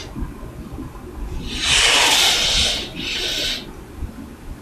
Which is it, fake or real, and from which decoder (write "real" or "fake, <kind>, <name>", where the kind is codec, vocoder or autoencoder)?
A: real